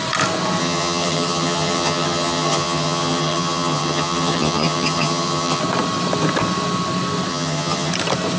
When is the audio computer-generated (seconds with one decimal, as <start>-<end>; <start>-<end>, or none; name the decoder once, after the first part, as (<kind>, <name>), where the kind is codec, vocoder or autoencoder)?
0.6-5.6 (vocoder, HiFi-GAN); 7.3-7.9

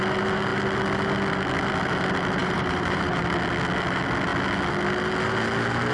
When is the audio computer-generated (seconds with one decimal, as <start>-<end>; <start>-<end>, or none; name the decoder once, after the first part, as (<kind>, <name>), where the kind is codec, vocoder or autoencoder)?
2.4-3.2 (vocoder, BigVGAN v2)

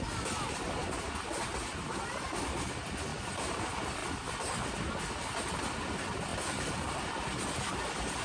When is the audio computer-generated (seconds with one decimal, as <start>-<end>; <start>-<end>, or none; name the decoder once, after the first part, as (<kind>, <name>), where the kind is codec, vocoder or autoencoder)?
none

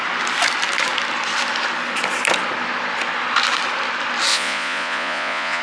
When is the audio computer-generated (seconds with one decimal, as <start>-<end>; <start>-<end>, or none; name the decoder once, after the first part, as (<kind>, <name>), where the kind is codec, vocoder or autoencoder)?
4.3-5.6 (vocoder, Vocos)